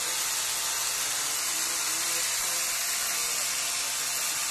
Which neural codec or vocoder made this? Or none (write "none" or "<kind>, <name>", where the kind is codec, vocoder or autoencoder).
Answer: none